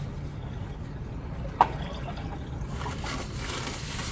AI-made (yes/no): no